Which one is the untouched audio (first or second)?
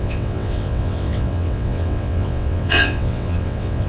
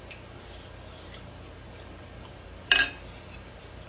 second